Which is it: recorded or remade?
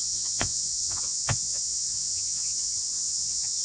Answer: remade